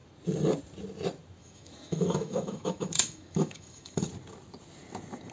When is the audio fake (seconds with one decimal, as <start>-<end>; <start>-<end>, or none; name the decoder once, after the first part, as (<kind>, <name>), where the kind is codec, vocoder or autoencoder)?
1.4-4.0 (autoencoder, DAC-VAE)